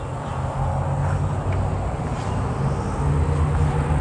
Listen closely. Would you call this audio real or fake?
real